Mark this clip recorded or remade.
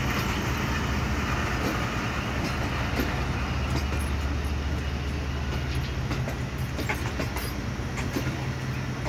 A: recorded